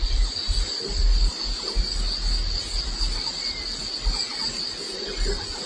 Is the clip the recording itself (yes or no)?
yes